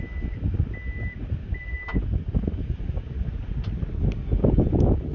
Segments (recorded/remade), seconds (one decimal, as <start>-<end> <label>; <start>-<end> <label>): 0.0-5.1 recorded